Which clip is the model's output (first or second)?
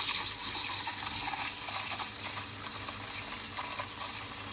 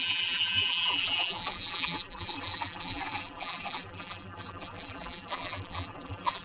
second